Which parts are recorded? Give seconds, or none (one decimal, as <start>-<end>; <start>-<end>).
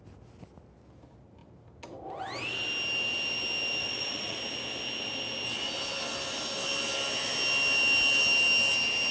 0.0-3.8; 4.4-9.1